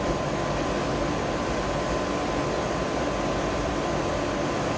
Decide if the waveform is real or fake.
real